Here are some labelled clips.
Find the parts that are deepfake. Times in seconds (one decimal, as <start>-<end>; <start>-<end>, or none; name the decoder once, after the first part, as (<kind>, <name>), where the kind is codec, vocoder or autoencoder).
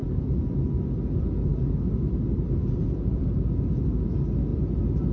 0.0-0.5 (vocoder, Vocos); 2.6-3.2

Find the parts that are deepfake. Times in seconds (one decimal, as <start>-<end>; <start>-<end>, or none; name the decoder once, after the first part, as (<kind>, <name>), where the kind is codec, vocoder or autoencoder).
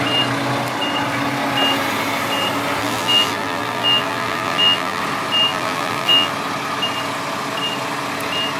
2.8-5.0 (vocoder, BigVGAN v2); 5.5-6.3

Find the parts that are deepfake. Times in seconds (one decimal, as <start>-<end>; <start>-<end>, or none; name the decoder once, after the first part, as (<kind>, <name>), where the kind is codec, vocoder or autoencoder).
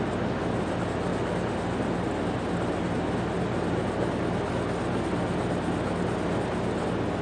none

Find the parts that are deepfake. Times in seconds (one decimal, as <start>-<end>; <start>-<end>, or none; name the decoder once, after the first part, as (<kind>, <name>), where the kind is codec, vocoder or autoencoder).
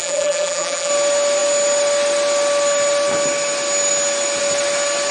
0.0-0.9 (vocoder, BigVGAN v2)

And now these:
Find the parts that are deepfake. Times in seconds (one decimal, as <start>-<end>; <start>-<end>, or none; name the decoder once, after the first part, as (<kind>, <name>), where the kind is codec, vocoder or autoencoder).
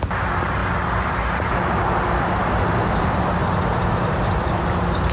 none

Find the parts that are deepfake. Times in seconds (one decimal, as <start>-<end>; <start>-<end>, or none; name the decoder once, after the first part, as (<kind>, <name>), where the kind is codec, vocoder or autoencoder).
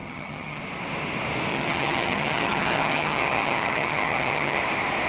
0.0-0.6 (vocoder, HiFi-GAN); 1.5-4.6